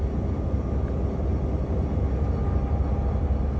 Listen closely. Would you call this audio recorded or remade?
recorded